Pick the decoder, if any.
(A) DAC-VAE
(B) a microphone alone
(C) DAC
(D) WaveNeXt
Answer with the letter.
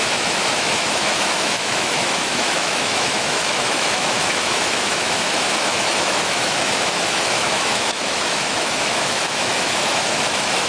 A